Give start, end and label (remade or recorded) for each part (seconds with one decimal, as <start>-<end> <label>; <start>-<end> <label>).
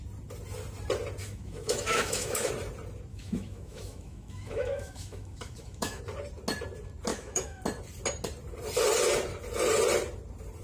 0.0-1.2 recorded; 1.2-2.5 remade; 2.5-3.1 recorded; 3.1-6.0 remade; 6.0-7.1 recorded; 7.1-7.6 remade; 7.6-10.6 recorded